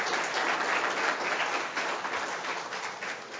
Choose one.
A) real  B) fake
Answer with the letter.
A